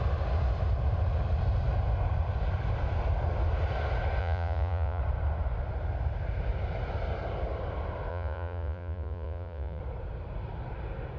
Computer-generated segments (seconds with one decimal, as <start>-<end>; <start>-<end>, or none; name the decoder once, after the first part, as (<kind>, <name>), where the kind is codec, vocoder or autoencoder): 4.2-5.0 (vocoder, Vocos); 8.1-9.8